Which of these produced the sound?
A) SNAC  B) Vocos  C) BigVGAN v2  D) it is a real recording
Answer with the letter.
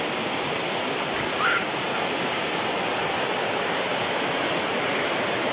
D